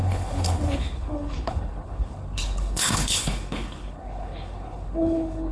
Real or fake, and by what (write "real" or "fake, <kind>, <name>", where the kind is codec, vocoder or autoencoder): fake, codec, HILCodec